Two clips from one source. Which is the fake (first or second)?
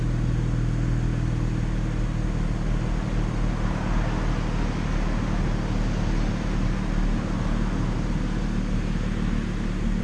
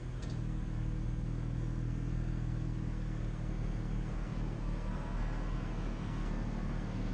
second